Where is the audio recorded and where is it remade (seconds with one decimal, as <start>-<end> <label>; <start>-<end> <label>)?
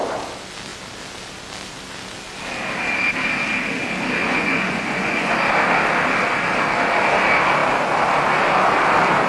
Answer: 0.0-4.2 recorded; 4.2-5.3 remade; 5.3-9.3 recorded